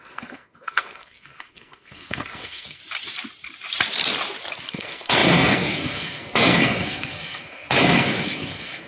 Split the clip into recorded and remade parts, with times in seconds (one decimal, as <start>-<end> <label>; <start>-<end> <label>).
0.0-2.8 remade; 2.8-4.7 recorded; 4.7-8.9 remade